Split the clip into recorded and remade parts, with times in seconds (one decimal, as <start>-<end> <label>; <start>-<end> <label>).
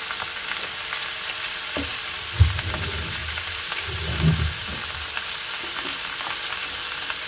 0.0-3.2 recorded; 3.2-4.2 remade; 4.2-7.3 recorded